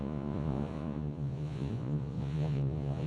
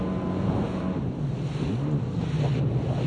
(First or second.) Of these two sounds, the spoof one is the first